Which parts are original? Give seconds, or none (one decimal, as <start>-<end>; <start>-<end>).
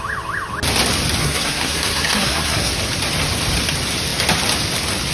0.0-1.2; 2.7-5.1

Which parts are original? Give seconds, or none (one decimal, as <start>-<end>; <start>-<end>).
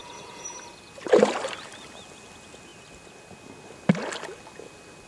1.7-5.1